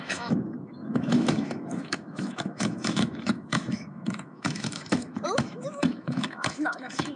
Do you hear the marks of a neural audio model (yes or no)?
yes